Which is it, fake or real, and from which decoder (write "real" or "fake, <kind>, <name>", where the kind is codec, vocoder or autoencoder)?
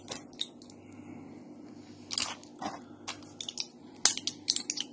real